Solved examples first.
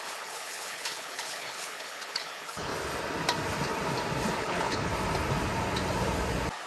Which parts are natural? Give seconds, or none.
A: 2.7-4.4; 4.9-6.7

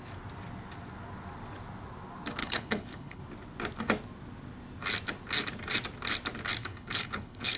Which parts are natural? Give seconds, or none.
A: 0.0-2.4; 3.2-6.6

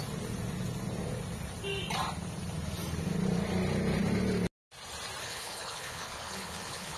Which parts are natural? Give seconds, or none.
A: 0.0-5.2

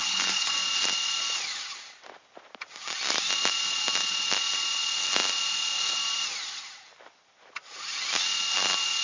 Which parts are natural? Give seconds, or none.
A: 0.5-9.0

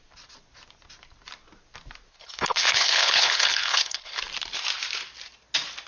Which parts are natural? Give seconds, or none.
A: 0.0-2.1; 4.2-5.9

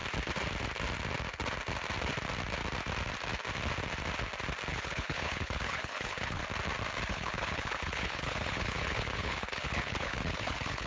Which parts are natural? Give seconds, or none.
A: 0.0-4.7; 6.4-7.1